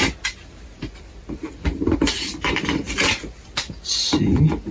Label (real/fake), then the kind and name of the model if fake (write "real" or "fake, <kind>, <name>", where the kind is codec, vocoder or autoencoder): real